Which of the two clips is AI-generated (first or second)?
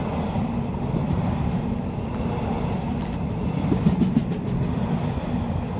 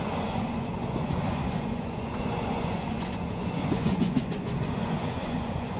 second